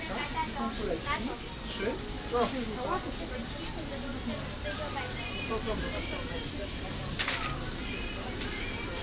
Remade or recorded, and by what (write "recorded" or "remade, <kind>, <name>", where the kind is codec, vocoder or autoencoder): recorded